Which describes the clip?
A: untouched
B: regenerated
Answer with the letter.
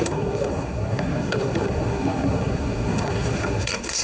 B